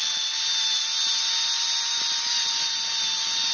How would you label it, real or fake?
real